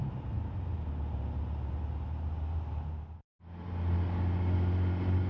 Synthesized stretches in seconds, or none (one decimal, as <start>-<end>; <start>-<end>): none